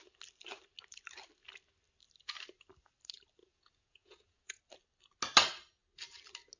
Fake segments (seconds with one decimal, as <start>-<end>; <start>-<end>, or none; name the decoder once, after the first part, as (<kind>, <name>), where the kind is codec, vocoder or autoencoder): 3.4-4.6 (vocoder, Vocos)